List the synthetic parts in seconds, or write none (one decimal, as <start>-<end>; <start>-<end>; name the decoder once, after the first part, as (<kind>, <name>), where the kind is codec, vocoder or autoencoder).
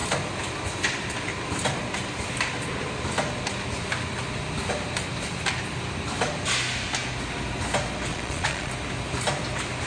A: 8.1-8.7 (vocoder, Vocos)